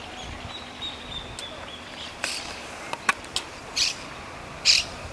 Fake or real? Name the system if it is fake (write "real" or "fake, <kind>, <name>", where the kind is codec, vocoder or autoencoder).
real